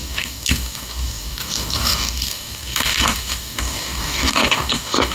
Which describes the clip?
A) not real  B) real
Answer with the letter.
A